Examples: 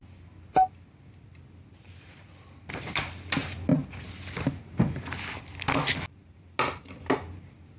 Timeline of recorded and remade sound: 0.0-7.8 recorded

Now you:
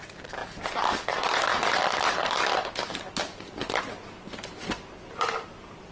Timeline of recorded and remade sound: 0.0-0.4 remade; 0.4-0.9 recorded; 0.9-1.5 remade; 1.5-5.0 recorded; 5.0-5.9 remade